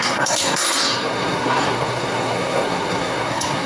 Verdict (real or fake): fake